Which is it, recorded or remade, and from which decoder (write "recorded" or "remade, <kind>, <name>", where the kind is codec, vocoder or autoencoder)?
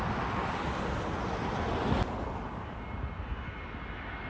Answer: recorded